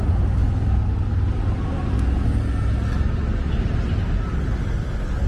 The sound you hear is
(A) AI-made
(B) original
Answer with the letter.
B